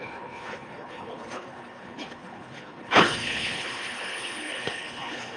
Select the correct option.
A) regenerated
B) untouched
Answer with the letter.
A